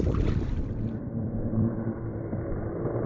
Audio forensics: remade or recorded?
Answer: remade